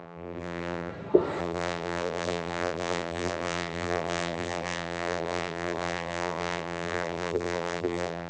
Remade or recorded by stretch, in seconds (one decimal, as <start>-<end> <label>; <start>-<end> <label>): 0.0-0.9 remade; 0.9-1.4 recorded; 1.4-8.3 remade